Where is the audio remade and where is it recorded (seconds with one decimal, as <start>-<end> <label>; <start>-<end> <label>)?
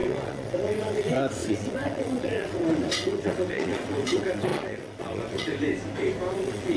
0.0-5.5 remade; 5.5-6.3 recorded; 6.3-6.8 remade